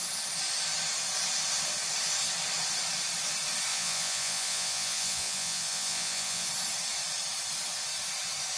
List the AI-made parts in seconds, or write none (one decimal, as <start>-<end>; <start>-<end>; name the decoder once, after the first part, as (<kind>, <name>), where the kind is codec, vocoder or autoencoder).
3.7-6.5 (vocoder, Vocos)